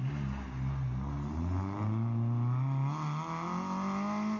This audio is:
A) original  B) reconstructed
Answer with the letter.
A